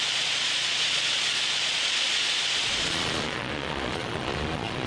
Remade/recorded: remade